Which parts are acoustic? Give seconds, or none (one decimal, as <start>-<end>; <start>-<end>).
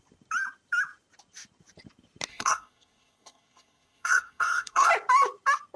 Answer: 0.0-2.3; 4.9-5.8